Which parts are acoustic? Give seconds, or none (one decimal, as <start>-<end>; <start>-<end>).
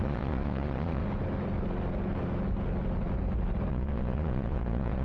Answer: 1.0-3.7